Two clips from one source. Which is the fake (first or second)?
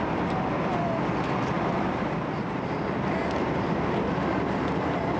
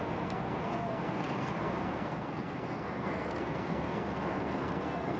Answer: second